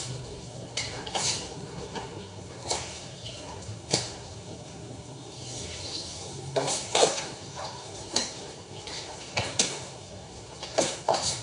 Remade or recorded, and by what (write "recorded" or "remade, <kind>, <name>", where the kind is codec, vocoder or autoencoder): remade, codec, SNAC